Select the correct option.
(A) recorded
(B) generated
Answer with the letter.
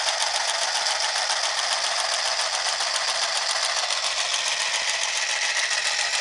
A